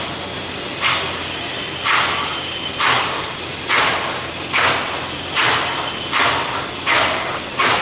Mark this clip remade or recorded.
recorded